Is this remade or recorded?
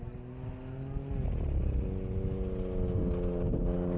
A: recorded